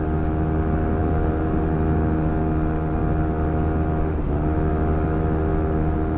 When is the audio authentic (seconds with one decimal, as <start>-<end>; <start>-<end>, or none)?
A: 0.0-6.2